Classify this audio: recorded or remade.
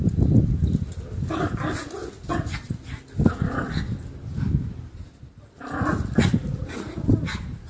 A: recorded